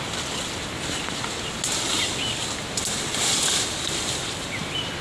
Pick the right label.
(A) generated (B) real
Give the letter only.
B